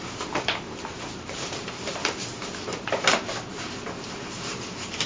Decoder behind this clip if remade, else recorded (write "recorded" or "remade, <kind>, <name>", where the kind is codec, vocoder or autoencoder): remade, vocoder, BigVGAN v2